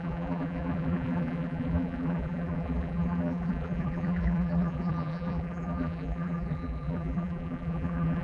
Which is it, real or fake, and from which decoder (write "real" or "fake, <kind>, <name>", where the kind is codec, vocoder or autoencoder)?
fake, vocoder, BigVGAN v2